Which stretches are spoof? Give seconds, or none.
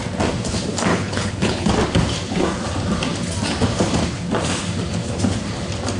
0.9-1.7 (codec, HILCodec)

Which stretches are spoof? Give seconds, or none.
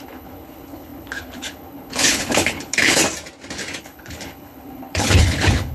0.0-3.0 (codec, HILCodec); 3.8-5.7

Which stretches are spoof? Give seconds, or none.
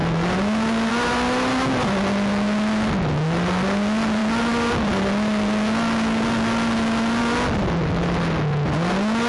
none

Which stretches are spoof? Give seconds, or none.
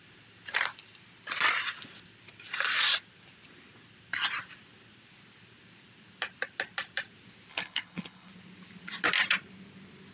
7.5-8.3 (codec, HILCodec)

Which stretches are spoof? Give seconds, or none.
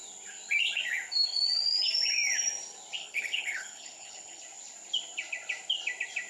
3.0-4.4 (codec, HILCodec)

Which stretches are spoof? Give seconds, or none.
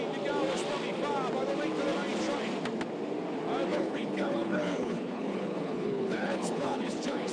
3.7-7.3 (codec, HILCodec)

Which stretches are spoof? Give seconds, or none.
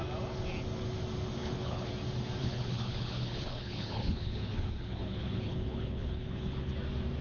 1.4-1.9 (codec, HILCodec); 2.4-6.7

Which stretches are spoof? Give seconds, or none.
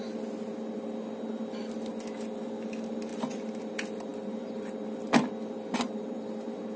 none